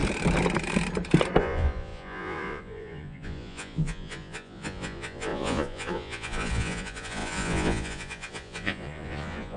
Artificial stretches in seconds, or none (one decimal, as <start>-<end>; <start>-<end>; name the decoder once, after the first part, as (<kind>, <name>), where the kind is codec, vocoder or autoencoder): 1.4-9.6 (vocoder, Vocos)